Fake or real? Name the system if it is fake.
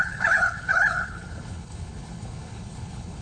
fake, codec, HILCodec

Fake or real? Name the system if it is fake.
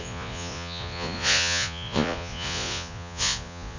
fake, vocoder, Vocos